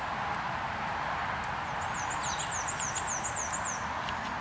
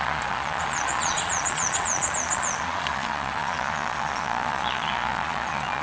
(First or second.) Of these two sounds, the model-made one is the second